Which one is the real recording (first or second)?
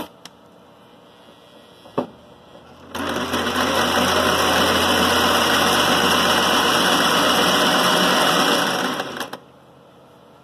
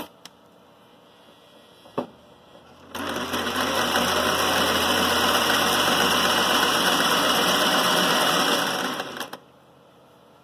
first